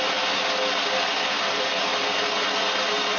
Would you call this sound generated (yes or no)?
no